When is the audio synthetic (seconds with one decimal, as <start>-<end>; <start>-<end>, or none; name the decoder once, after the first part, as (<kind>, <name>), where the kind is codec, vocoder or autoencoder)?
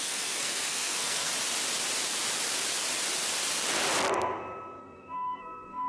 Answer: 0.0-1.3 (codec, SNAC); 4.8-5.9